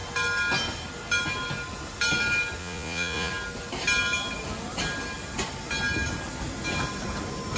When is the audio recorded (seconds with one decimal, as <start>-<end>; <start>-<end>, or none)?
0.0-2.6; 3.3-7.6